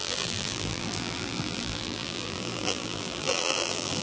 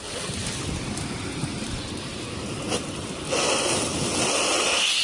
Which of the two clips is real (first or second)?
second